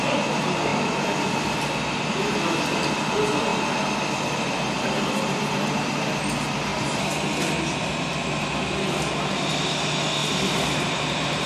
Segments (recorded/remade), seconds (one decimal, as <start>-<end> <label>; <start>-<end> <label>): 0.0-10.2 recorded; 10.2-11.5 remade